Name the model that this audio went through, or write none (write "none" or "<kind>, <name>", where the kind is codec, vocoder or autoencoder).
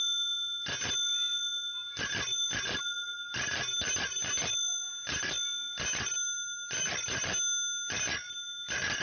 none